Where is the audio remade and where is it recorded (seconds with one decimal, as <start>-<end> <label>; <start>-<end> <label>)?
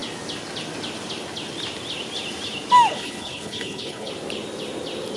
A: 0.0-2.9 recorded; 2.9-4.1 remade; 4.1-5.2 recorded